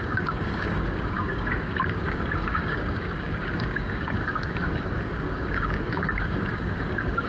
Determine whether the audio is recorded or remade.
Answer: remade